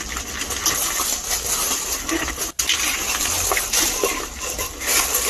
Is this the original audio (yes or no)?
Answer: yes